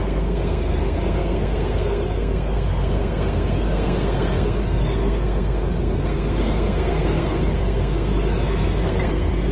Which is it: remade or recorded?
remade